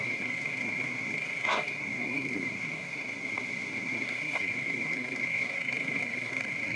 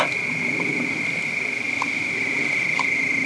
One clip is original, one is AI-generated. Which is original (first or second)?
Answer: second